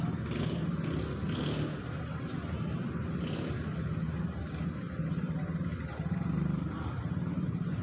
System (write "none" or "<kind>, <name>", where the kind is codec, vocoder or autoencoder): none